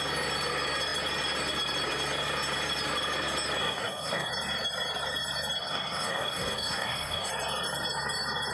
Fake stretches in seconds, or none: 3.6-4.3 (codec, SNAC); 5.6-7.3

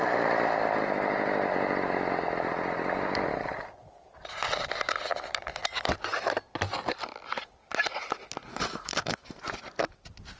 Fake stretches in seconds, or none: 8.5-9.4 (codec, SNAC)

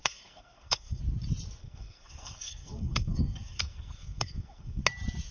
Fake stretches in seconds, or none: 0.0-1.0 (codec, SNAC); 1.6-4.8